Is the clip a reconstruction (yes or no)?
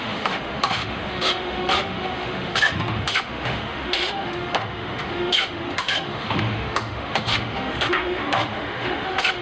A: yes